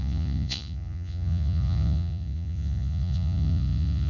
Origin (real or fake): fake